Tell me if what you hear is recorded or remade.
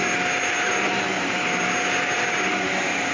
recorded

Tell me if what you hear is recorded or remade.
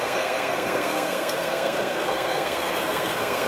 remade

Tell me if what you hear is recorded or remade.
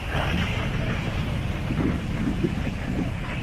remade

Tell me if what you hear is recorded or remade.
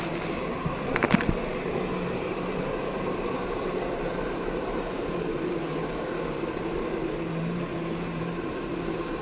remade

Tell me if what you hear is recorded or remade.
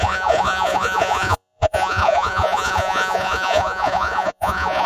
remade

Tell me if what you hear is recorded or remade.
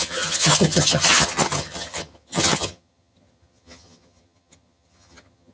remade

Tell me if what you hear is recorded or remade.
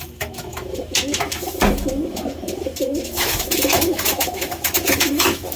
remade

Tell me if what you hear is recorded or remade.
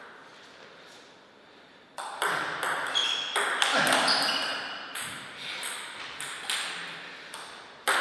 recorded